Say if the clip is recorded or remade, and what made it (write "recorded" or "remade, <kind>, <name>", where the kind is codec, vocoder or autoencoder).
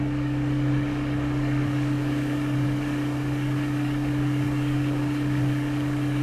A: remade, codec, DAC